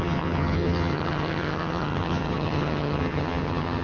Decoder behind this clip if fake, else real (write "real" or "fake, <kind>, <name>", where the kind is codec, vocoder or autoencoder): fake, vocoder, HiFi-GAN